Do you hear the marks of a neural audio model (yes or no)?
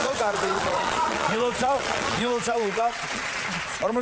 yes